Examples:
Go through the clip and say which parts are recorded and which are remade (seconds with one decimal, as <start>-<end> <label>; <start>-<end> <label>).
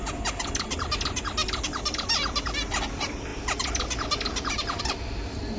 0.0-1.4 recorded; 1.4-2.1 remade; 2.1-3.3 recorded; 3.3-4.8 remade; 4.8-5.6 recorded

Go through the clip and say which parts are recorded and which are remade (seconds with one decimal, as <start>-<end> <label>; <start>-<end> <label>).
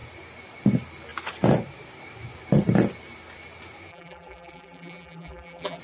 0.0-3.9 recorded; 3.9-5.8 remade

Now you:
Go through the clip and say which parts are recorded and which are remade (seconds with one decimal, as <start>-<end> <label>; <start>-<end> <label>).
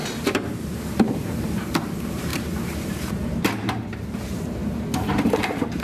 0.0-5.8 remade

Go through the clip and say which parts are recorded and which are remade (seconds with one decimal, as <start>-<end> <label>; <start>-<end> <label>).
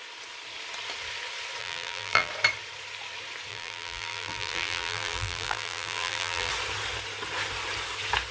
0.0-1.6 recorded; 1.6-2.3 remade; 2.3-3.5 recorded; 3.5-6.5 remade; 6.5-8.3 recorded